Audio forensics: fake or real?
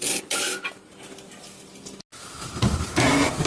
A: real